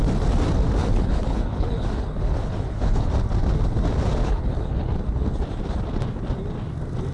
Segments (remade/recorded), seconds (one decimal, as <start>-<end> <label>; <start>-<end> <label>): 0.0-0.8 recorded; 0.8-3.1 remade; 3.1-4.2 recorded; 4.2-4.9 remade; 4.9-7.1 recorded